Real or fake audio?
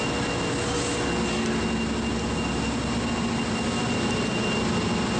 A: real